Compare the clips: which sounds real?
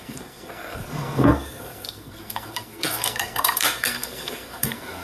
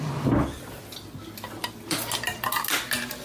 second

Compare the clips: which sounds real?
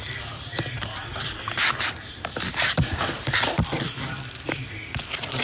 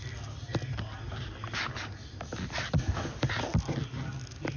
second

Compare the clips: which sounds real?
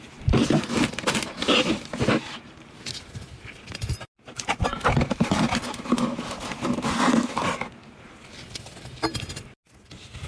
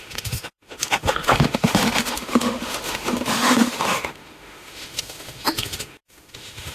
first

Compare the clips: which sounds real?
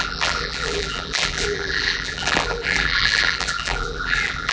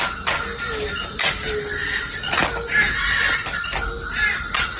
second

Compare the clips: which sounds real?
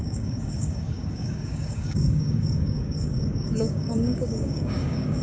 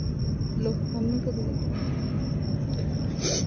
second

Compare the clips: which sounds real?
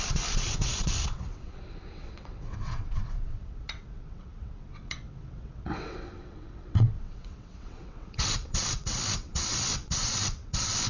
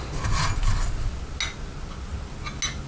second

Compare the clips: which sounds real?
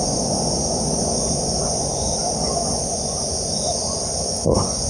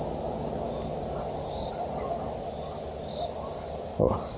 second